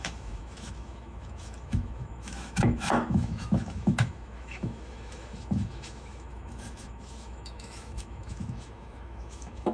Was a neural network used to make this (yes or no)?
yes